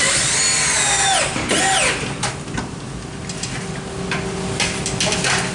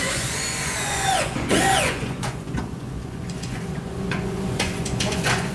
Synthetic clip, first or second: second